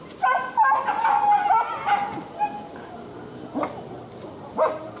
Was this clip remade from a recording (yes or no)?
no